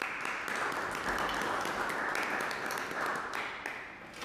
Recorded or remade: recorded